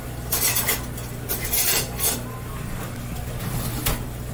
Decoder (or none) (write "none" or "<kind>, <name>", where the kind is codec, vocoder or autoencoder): none